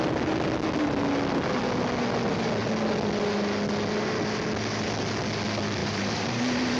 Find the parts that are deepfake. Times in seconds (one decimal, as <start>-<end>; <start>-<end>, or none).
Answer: 5.8-6.8